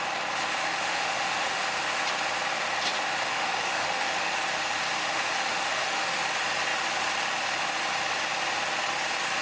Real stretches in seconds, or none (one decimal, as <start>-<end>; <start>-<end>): 0.0-0.6; 1.6-3.2; 4.3-5.0; 6.2-9.4